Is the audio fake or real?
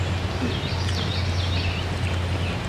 real